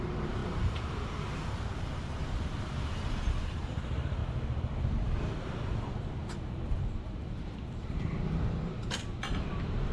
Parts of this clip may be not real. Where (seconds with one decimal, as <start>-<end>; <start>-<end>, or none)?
0.0-4.2; 5.4-6.2; 6.8-9.9

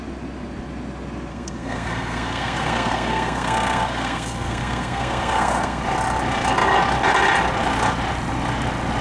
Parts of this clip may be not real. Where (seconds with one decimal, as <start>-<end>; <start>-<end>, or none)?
1.3-5.8